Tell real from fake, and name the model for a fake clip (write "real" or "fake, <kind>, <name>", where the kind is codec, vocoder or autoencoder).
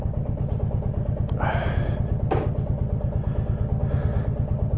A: real